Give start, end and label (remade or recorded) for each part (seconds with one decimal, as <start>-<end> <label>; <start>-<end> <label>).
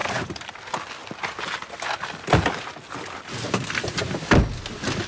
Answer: 0.0-0.6 remade; 0.6-5.1 recorded